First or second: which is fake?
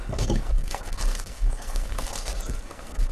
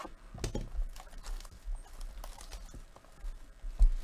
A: first